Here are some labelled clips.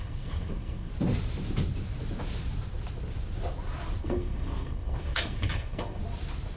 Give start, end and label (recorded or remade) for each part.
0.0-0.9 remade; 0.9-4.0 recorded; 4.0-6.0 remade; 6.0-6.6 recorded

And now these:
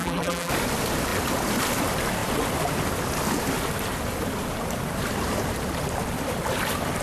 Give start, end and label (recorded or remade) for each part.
0.0-0.5 remade; 0.5-7.0 recorded